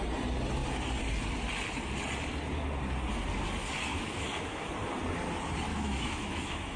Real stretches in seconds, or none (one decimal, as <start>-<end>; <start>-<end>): 0.0-3.9; 4.7-5.7